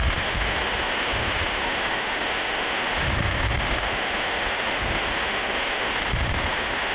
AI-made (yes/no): yes